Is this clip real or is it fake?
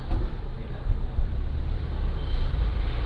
real